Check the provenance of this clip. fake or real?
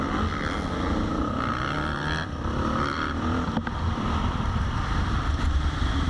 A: real